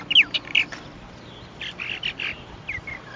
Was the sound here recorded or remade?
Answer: recorded